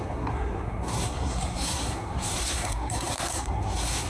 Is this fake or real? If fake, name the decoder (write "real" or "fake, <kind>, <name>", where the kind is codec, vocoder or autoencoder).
fake, codec, SNAC